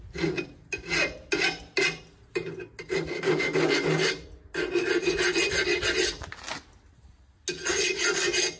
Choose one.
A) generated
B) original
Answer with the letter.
B